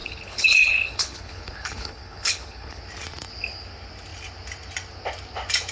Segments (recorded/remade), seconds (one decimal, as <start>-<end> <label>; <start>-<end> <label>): 0.0-2.8 remade; 2.8-5.7 recorded